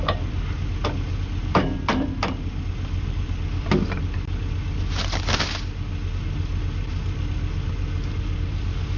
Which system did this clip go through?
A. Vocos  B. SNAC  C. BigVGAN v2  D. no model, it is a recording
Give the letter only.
D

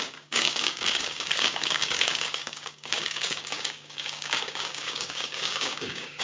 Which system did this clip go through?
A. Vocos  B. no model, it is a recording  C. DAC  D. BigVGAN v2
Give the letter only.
C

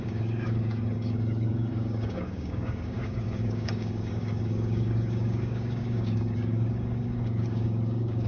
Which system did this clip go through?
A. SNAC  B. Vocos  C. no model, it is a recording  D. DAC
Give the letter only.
D